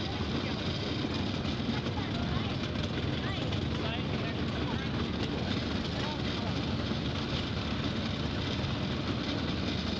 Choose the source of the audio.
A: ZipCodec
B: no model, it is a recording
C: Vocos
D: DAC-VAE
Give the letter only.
B